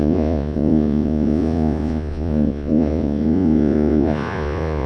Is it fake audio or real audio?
fake